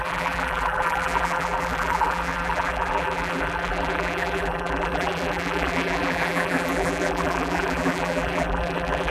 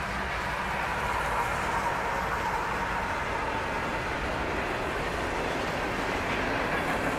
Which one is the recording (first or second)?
second